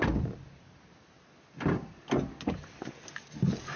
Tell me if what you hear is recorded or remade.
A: recorded